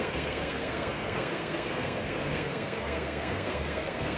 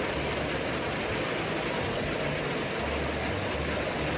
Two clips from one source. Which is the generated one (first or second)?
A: first